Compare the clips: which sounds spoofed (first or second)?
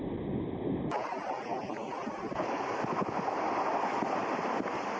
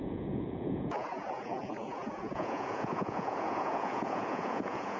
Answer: second